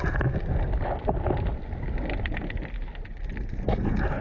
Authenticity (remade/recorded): recorded